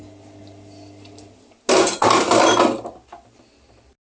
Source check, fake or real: real